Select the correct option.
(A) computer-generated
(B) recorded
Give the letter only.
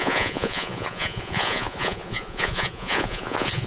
A